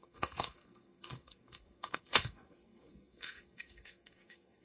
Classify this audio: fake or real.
fake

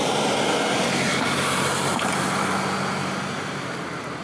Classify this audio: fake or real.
real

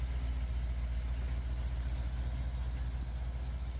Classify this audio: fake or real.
real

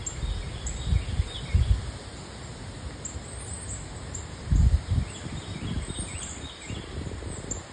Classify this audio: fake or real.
real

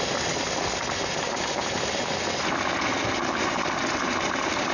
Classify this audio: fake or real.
real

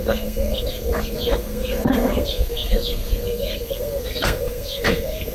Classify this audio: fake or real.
fake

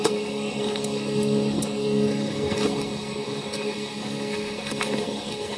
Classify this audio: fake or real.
fake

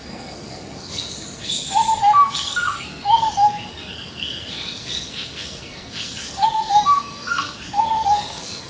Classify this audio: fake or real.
fake